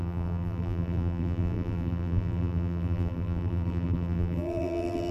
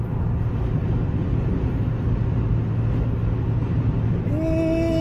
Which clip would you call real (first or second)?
second